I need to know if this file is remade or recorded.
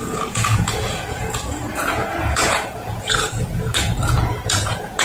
remade